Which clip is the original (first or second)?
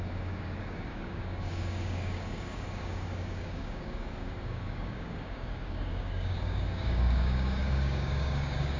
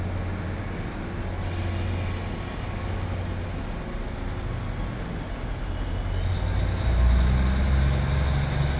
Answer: second